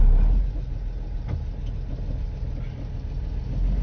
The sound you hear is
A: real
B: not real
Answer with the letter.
A